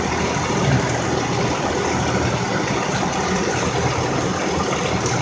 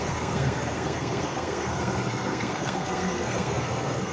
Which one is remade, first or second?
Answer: second